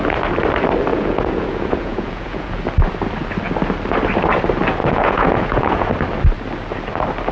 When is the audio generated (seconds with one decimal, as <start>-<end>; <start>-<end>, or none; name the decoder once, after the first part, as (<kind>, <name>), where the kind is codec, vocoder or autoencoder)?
0.9-2.6 (vocoder, Vocos); 4.8-5.9